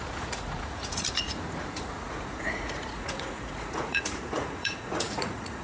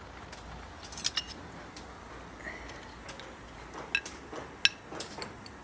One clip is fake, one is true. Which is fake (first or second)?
first